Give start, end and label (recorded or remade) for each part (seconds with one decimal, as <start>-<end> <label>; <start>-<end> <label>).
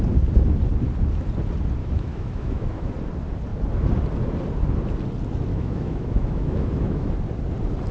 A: 0.0-1.8 recorded; 1.8-2.9 remade; 2.9-5.5 recorded; 5.5-7.1 remade; 7.1-7.9 recorded